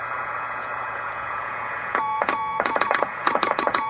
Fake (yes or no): yes